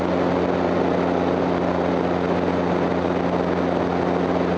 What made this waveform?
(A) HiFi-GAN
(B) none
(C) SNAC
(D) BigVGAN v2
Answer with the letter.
B